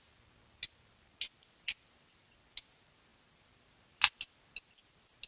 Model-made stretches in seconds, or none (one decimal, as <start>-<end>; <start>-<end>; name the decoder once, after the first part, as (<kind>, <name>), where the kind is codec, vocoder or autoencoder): none